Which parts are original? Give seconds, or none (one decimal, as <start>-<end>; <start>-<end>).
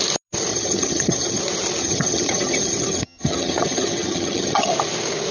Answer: 0.0-0.5; 1.4-1.8; 4.7-5.3